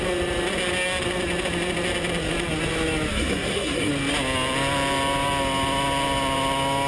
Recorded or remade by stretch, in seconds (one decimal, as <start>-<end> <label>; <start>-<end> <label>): 0.0-3.1 recorded; 3.1-3.9 remade; 3.9-6.9 recorded